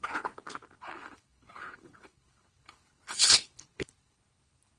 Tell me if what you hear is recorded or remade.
remade